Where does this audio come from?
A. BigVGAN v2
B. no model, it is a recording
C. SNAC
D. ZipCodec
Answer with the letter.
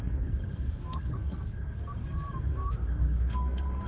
C